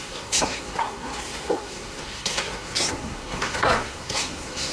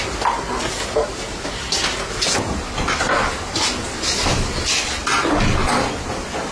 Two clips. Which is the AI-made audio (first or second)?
first